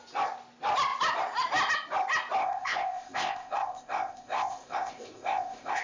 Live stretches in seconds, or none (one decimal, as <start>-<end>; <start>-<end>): 0.0-2.4